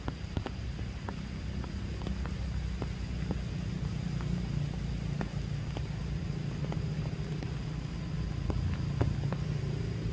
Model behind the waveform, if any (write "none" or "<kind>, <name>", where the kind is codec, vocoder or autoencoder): none